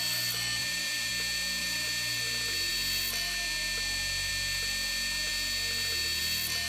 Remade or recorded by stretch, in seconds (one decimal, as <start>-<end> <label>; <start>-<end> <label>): 0.0-0.6 recorded; 0.6-1.1 remade; 1.1-1.6 recorded; 1.6-2.2 remade; 2.2-6.7 recorded